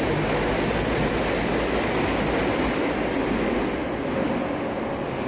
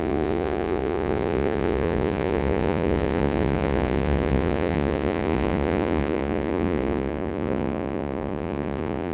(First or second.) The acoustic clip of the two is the first